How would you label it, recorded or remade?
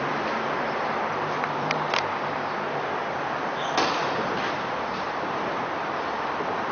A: remade